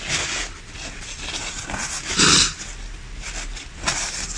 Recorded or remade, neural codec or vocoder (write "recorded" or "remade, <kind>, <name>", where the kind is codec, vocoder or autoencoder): recorded